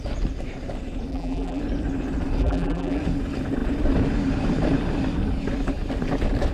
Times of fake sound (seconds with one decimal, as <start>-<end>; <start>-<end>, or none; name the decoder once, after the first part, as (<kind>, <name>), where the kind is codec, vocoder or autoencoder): 1.1-1.6 (vocoder, BigVGAN v2); 2.4-3.0